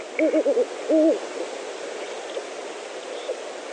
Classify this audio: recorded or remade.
recorded